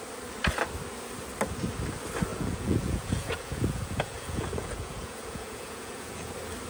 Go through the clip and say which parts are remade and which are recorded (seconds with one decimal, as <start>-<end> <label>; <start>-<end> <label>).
0.0-2.3 recorded; 2.3-6.3 remade; 6.3-6.7 recorded